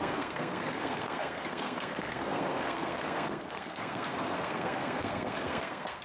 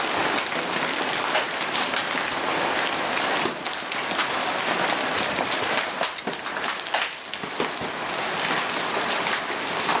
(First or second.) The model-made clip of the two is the first